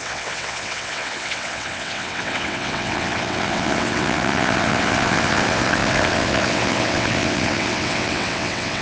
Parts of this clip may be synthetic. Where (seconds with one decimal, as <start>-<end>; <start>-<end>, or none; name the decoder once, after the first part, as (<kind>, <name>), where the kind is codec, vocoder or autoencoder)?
0.0-8.8 (vocoder, WaveNeXt)